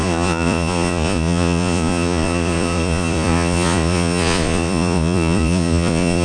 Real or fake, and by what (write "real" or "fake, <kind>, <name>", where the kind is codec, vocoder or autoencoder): fake, vocoder, Vocos